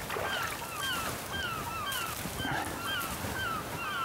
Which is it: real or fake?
real